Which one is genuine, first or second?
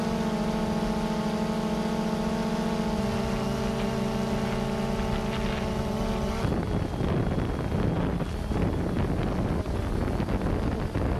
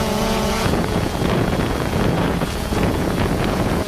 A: first